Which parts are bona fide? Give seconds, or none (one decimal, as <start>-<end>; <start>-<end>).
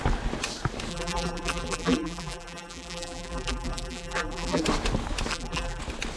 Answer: 0.0-0.9; 4.6-5.3; 5.8-6.2